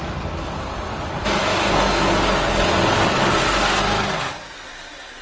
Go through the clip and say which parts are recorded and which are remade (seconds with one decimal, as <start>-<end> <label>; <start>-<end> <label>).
0.0-5.2 recorded